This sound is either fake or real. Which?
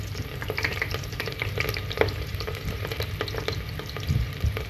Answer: fake